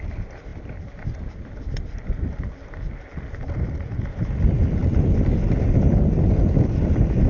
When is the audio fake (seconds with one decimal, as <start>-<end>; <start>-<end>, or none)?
none